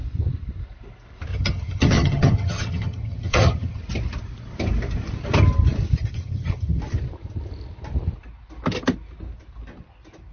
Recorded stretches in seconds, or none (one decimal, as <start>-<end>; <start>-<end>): 0.0-1.3; 3.8-6.0; 6.8-10.3